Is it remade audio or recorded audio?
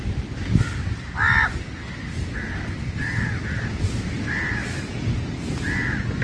recorded